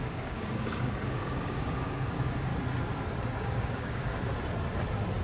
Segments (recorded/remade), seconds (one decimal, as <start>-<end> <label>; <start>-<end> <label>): 0.0-2.5 remade; 2.5-3.2 recorded; 3.2-4.1 remade; 4.1-5.2 recorded